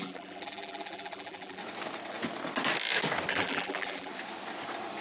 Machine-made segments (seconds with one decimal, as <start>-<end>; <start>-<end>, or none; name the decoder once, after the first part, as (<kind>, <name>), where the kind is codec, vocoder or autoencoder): 0.0-1.6 (vocoder, BigVGAN v2); 3.3-4.1